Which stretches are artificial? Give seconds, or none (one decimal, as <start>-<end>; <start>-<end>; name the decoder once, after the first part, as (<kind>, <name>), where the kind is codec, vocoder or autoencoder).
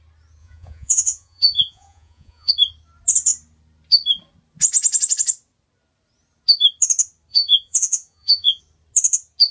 0.4-2.5 (vocoder, Vocos); 7.3-8.6